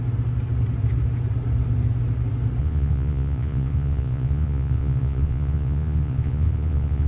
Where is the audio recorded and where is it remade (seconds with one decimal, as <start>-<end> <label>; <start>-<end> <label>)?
0.0-2.6 recorded; 2.6-7.1 remade